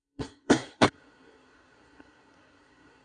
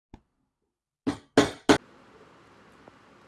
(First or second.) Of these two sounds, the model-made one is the first